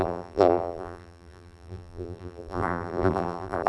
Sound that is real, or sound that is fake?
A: fake